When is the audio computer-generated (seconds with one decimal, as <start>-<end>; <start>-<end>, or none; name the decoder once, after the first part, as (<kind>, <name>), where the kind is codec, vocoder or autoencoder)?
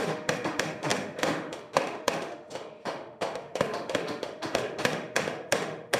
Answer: 0.0-6.0 (autoencoder, DAC-VAE)